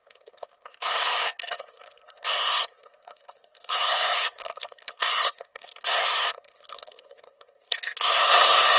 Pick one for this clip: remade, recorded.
remade